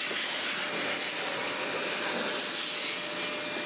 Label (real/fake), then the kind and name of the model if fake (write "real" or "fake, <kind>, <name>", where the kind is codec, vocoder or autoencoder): real